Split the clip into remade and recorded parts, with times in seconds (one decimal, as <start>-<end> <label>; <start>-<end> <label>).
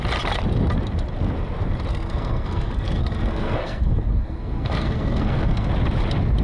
0.0-1.9 recorded; 1.9-5.7 remade; 5.7-6.4 recorded